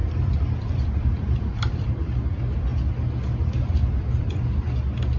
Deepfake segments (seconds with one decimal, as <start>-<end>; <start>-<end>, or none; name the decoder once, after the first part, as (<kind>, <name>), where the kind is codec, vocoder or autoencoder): 0.0-1.9 (vocoder, BigVGAN v2)